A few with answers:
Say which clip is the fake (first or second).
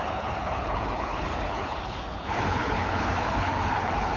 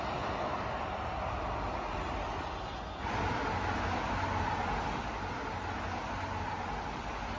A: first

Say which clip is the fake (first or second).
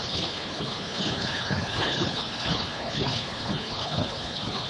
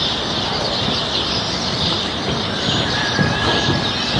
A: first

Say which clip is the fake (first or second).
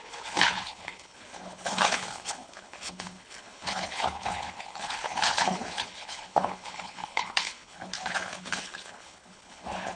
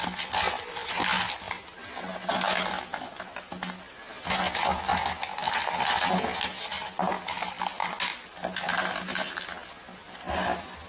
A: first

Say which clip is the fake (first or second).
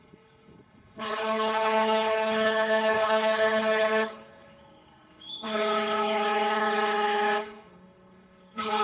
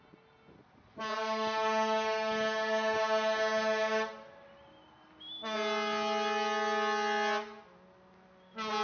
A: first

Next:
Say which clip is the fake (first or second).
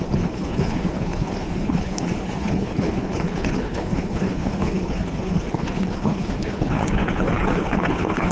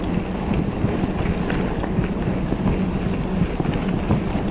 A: first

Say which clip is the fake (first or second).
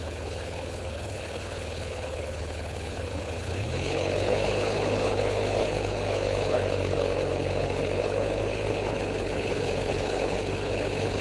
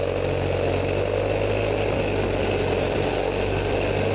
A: first